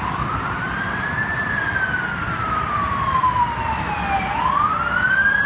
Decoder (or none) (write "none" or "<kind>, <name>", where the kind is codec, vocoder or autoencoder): none